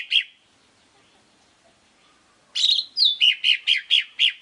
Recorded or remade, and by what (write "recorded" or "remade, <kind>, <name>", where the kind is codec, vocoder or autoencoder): recorded